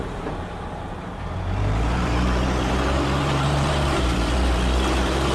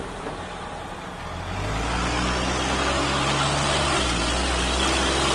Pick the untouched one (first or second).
second